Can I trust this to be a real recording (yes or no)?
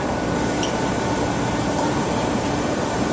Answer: no